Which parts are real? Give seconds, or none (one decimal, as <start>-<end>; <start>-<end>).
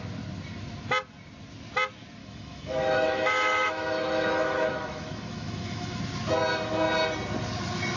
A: 0.0-2.2; 6.0-8.0